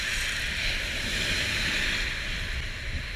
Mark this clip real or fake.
real